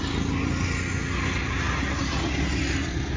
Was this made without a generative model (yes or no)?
yes